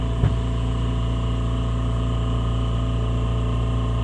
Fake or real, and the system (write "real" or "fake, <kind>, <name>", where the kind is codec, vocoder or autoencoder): fake, vocoder, BigVGAN v2